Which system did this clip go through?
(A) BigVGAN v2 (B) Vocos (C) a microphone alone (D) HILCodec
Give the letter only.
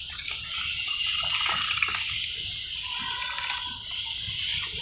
C